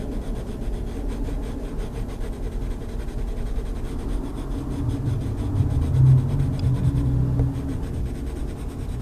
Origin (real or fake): fake